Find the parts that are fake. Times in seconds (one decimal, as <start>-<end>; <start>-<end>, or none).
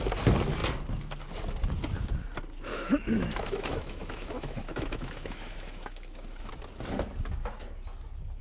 2.7-6.5